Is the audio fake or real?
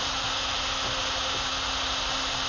real